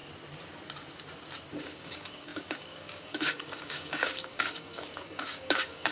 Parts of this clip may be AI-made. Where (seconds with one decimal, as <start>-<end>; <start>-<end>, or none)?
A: 1.6-5.9